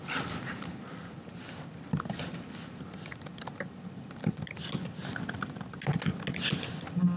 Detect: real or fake real